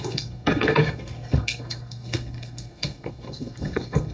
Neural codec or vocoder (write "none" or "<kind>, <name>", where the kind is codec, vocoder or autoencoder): codec, SNAC